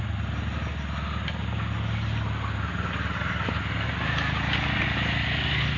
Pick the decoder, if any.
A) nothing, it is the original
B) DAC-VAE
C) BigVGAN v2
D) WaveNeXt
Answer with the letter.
A